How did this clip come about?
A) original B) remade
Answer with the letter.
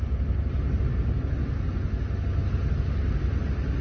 A